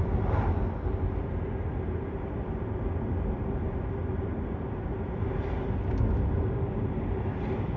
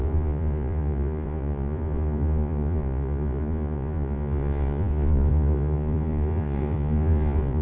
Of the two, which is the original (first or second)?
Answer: first